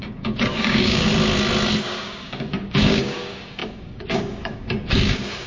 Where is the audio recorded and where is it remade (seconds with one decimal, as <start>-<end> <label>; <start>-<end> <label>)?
0.0-1.1 remade; 1.1-2.0 recorded; 2.0-5.5 remade